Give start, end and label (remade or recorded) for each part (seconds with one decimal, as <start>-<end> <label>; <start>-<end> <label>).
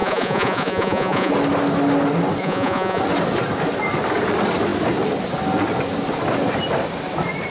0.0-1.3 remade; 1.3-2.4 recorded; 2.4-3.0 remade; 3.0-7.5 recorded